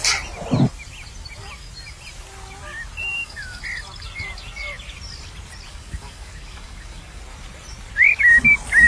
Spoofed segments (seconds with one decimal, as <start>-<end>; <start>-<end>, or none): 3.1-3.6; 5.7-7.2